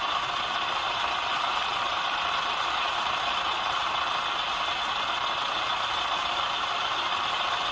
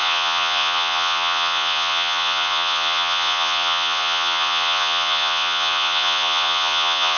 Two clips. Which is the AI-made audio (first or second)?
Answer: second